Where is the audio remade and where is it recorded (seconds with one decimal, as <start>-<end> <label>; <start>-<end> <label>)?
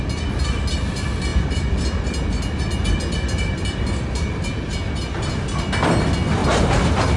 0.0-6.4 recorded; 6.4-7.2 remade